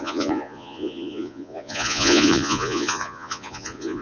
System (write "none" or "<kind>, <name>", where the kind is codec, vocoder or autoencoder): vocoder, Vocos